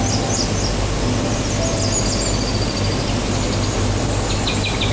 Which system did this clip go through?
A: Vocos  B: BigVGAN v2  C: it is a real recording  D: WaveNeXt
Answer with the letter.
C